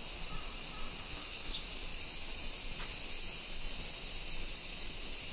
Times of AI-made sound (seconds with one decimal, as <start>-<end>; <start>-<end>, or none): 1.0-1.5